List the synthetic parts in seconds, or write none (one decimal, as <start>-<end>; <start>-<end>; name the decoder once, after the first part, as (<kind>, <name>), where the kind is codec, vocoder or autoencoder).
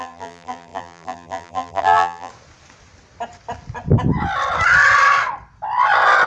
0.0-2.3 (vocoder, BigVGAN v2)